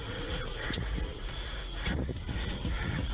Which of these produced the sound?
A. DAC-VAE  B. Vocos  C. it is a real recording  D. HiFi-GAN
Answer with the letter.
B